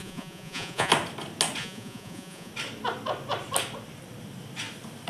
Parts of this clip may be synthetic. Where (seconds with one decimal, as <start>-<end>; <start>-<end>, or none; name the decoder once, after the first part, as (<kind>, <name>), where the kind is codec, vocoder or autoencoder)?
0.0-0.9 (vocoder, Vocos); 1.6-2.5